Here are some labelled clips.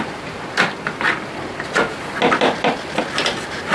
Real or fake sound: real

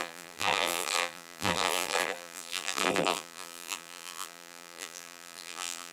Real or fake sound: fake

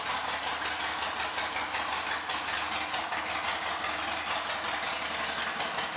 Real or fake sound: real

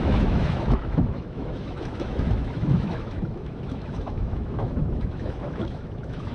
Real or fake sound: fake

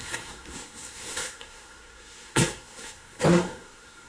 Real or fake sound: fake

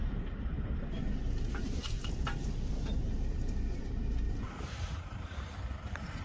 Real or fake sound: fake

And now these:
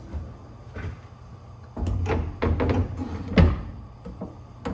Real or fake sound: real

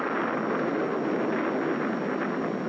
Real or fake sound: real